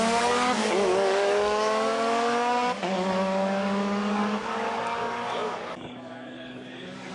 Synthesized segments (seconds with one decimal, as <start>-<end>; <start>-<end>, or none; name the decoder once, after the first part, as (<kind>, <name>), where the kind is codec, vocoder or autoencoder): 0.0-7.1 (codec, DAC)